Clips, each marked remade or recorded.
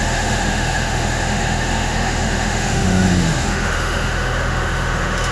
remade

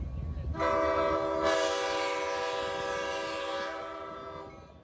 recorded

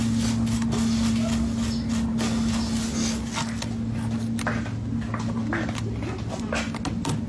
recorded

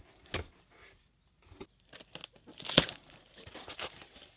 recorded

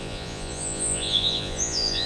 remade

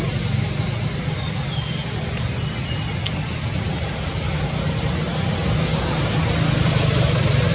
recorded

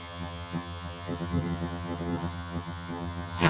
remade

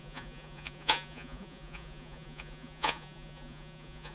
remade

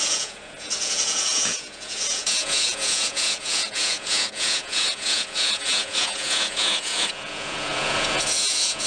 remade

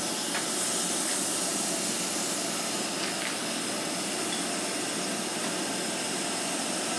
recorded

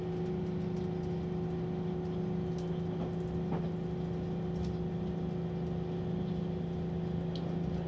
recorded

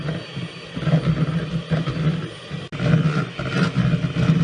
recorded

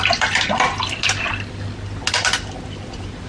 recorded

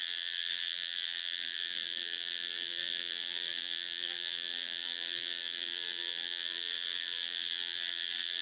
remade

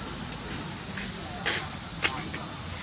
recorded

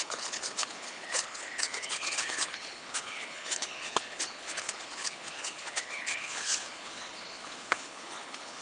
remade